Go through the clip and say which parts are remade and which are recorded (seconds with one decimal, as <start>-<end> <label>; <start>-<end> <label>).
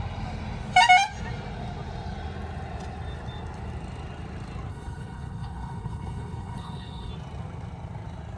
0.0-4.7 recorded; 4.7-7.1 remade; 7.1-8.4 recorded